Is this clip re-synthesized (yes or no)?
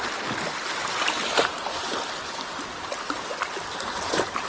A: no